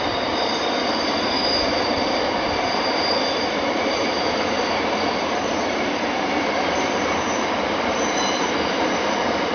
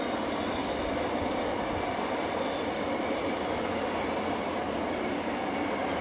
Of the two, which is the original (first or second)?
second